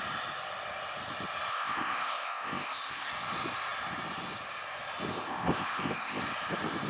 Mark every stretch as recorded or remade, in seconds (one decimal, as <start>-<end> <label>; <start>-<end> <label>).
0.0-1.5 recorded; 1.5-3.1 remade; 3.1-5.1 recorded; 5.1-6.2 remade; 6.2-6.9 recorded